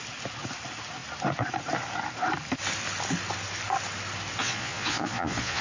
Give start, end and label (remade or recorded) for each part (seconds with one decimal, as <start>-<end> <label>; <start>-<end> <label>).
0.0-4.4 recorded; 4.4-5.6 remade